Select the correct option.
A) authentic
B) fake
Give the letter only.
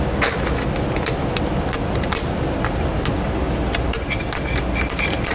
A